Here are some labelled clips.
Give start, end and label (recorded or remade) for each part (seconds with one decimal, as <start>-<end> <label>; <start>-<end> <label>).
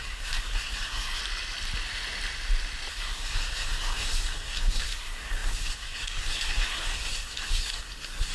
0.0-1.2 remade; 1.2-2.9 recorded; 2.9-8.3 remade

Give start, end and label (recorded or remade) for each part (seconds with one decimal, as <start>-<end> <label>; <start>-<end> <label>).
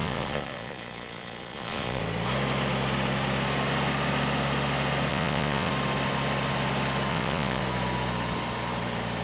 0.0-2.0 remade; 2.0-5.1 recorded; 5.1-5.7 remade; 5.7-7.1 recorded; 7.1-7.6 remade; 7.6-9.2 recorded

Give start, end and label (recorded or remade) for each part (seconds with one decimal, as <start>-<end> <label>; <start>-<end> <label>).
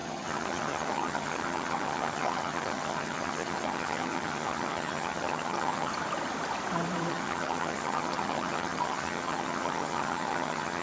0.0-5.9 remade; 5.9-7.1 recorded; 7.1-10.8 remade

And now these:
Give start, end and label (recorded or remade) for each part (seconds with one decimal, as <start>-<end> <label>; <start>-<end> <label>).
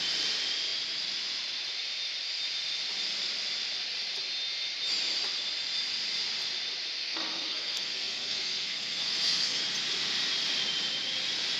0.0-7.0 recorded; 7.0-9.6 remade; 9.6-11.6 recorded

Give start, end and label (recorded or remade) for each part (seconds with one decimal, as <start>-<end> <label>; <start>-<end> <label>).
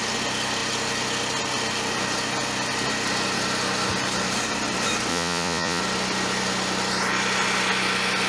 0.0-5.1 recorded; 5.1-5.8 remade; 5.8-8.3 recorded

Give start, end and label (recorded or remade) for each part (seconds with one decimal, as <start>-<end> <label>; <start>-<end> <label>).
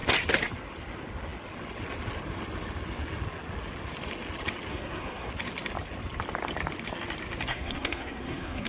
0.0-4.7 recorded; 4.7-5.3 remade; 5.3-7.5 recorded; 7.5-8.7 remade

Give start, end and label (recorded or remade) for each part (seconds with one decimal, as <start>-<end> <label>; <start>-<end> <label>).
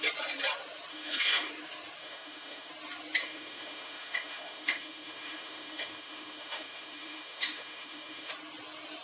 0.0-0.9 recorded; 0.9-1.5 remade; 1.5-2.0 recorded; 2.0-2.7 remade; 2.7-3.2 recorded; 3.2-8.3 remade; 8.3-9.0 recorded